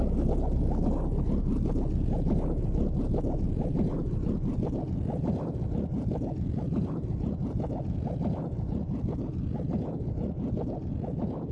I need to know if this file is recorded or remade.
recorded